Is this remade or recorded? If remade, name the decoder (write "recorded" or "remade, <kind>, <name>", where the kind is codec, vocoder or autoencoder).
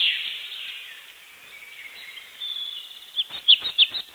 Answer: recorded